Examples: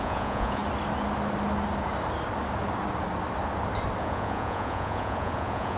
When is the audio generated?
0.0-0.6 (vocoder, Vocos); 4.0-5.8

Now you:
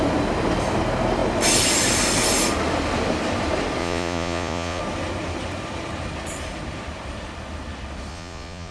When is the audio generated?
3.8-4.8 (vocoder, Vocos); 8.1-8.7

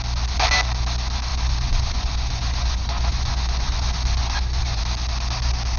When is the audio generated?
1.3-4.8 (vocoder, Vocos)